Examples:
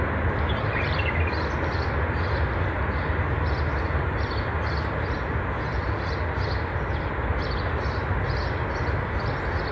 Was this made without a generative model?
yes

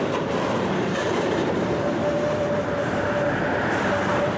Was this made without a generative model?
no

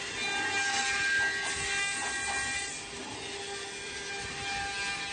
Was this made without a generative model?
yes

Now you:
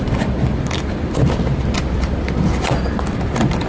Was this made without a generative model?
no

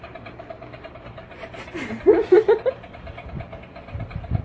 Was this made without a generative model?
no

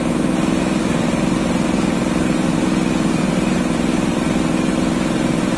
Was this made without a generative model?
yes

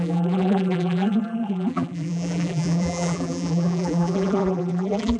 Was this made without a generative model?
no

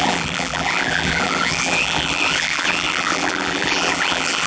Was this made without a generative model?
no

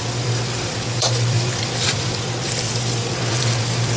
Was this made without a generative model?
no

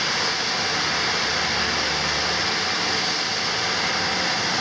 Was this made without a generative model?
yes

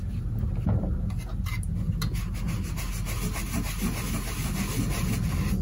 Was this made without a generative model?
yes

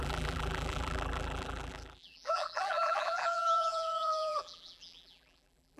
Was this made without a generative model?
no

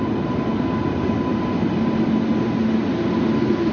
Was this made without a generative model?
yes